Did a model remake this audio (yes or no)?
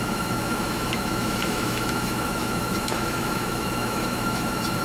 yes